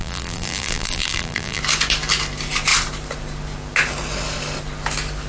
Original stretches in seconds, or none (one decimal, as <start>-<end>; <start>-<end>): 1.6-5.3